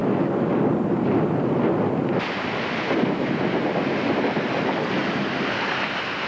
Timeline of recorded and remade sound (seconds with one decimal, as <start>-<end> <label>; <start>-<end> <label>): 0.0-6.3 recorded